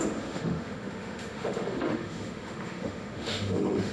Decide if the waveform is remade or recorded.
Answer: remade